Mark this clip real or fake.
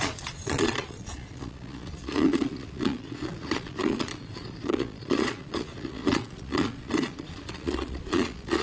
fake